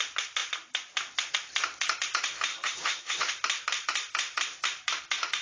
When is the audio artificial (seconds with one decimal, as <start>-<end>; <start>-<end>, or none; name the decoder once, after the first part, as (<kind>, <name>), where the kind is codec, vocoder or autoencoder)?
2.5-3.3 (vocoder, HiFi-GAN)

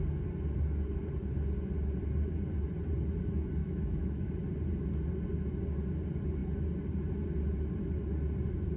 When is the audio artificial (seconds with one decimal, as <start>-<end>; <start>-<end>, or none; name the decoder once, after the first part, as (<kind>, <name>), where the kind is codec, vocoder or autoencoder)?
3.6-4.3 (autoencoder, DAC-VAE)

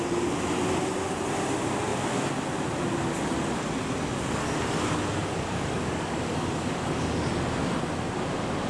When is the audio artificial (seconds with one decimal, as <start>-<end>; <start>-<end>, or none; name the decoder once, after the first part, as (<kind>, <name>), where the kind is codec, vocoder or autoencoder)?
5.2-7.3 (codec, DAC)

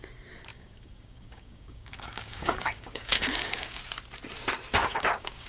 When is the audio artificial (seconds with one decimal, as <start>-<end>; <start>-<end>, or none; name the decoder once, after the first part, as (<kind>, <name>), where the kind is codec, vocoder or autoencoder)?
0.5-3.8 (codec, DAC); 4.8-5.5

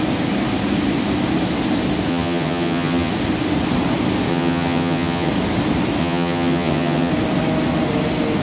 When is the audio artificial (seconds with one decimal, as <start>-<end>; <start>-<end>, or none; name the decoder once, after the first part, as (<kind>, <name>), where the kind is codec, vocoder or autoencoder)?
2.1-3.1 (vocoder, HiFi-GAN); 4.3-5.3; 6.0-7.1